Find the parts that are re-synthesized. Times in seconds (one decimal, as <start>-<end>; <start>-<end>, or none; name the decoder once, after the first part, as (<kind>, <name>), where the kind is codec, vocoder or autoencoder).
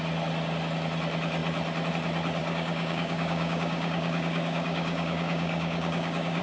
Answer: 2.4-6.4 (codec, DAC)